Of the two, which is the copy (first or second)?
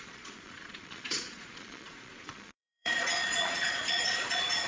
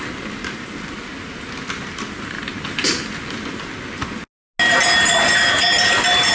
first